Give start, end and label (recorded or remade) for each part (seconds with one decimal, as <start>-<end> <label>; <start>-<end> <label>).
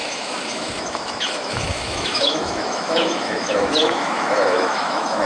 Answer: 0.0-5.3 remade